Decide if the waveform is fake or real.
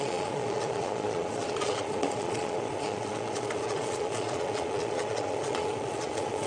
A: fake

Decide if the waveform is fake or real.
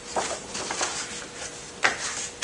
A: real